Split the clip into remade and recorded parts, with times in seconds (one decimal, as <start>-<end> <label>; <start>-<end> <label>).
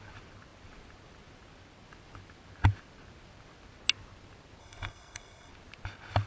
0.0-4.6 recorded; 4.6-5.5 remade; 5.5-6.3 recorded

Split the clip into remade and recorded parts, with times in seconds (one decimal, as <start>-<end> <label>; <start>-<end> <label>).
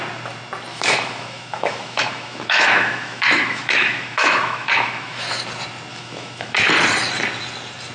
0.0-0.7 recorded; 0.7-5.4 remade; 5.4-5.9 recorded; 5.9-6.7 remade; 6.7-7.9 recorded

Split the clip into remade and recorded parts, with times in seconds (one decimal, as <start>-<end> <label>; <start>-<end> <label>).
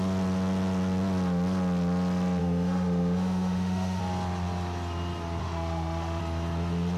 0.0-2.4 recorded; 2.4-4.0 remade; 4.0-5.4 recorded; 5.4-6.2 remade; 6.2-7.0 recorded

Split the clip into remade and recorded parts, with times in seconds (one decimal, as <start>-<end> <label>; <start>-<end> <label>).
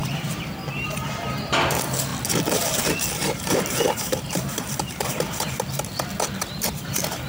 0.0-0.7 remade; 0.7-3.2 recorded; 3.2-5.5 remade; 5.5-7.3 recorded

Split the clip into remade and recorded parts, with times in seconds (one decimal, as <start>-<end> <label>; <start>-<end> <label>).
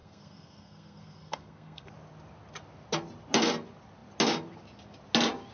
0.0-1.9 remade; 1.9-5.5 recorded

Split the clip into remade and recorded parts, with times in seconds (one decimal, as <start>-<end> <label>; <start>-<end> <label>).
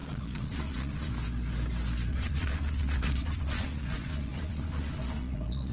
0.0-1.1 remade; 1.1-2.1 recorded; 2.1-5.7 remade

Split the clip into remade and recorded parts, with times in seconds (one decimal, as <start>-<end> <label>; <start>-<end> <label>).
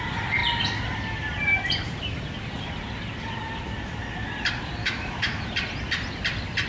0.0-4.8 recorded; 4.8-5.5 remade; 5.5-6.7 recorded